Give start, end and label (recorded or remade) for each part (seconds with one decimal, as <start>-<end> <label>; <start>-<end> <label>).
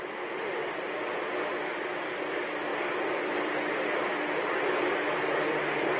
0.0-6.0 recorded